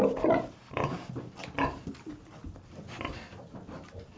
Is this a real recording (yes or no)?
yes